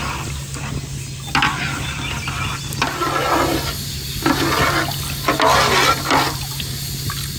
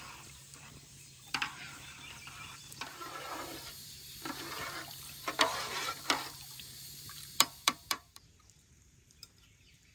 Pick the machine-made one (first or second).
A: second